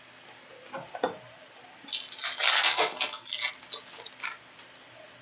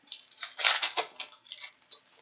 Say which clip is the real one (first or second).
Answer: first